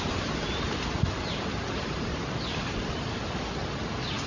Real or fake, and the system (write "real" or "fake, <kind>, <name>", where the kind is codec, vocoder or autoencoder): fake, vocoder, BigVGAN v2